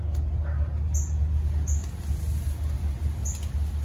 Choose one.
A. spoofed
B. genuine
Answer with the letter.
B